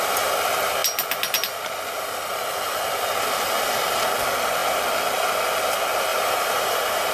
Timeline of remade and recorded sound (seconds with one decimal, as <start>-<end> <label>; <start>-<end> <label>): 0.0-6.1 recorded; 6.1-7.1 remade